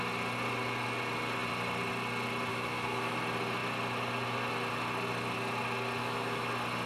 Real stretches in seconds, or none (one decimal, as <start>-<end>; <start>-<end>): 0.0-2.5; 3.2-6.0; 6.5-6.9